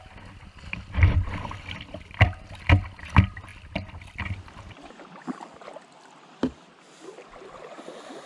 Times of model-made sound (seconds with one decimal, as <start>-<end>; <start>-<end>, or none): none